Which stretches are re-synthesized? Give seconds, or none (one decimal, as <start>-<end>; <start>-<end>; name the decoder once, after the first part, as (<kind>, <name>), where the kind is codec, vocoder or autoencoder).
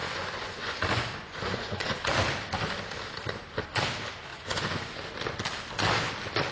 0.0-2.1 (vocoder, Vocos); 4.3-5.1